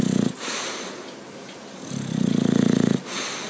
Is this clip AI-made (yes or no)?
no